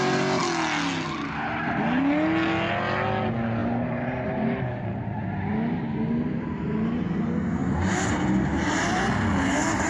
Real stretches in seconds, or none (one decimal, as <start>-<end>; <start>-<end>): 0.0-3.6; 4.9-9.9